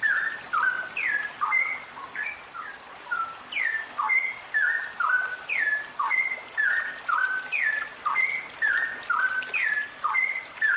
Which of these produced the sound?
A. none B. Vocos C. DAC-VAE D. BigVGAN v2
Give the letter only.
A